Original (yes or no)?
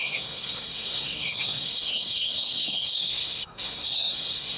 no